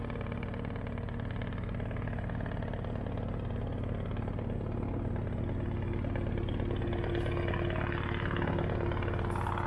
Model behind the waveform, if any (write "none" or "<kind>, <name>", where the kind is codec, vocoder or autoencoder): none